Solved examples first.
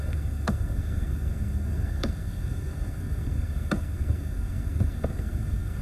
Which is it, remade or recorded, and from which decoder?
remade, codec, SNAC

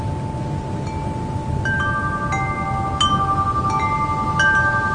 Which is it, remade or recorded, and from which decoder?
recorded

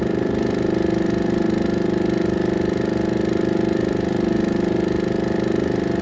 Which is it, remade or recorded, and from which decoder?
recorded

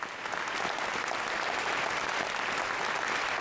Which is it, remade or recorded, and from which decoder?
recorded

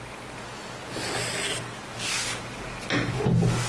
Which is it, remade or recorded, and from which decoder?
recorded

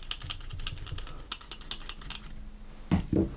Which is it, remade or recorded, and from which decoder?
recorded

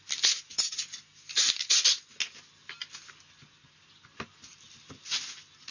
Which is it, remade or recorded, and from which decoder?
recorded